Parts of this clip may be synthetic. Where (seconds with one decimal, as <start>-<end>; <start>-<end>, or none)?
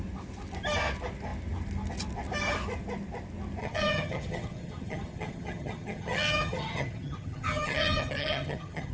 3.6-8.9